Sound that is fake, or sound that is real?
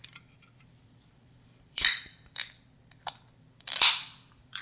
fake